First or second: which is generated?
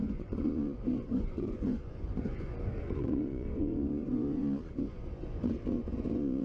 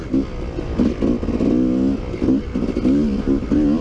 first